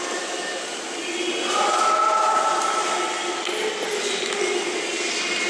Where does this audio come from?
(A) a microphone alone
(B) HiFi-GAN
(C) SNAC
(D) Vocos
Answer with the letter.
A